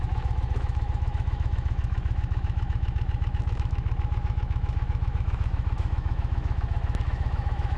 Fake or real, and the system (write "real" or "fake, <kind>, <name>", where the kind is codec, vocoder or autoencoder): fake, autoencoder, DAC-VAE